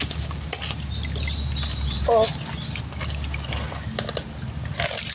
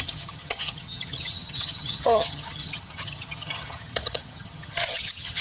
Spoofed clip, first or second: second